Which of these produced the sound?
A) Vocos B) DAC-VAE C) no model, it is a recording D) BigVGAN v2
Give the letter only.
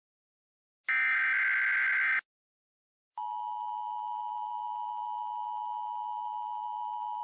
C